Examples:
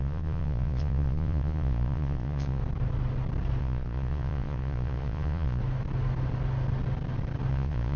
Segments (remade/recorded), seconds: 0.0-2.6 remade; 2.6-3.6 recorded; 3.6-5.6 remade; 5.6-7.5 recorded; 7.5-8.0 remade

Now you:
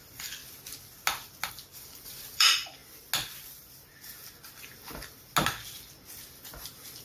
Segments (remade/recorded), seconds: 0.0-0.4 remade; 0.4-1.5 recorded; 1.5-2.8 remade; 2.8-7.0 recorded

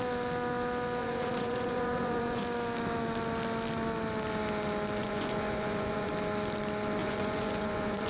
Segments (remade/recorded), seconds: 0.0-1.0 recorded; 1.0-2.4 remade; 2.4-5.0 recorded; 5.0-6.1 remade; 6.1-7.0 recorded; 7.0-8.1 remade

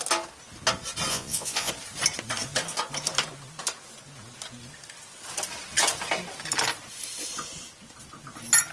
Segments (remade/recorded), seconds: 0.0-1.1 recorded; 1.1-1.7 remade; 1.7-8.7 recorded